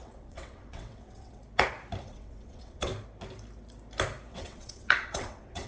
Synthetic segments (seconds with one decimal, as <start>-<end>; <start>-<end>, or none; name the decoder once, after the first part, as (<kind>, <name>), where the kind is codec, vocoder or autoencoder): 0.0-1.4 (vocoder, WaveNeXt); 2.0-2.9; 4.3-5.7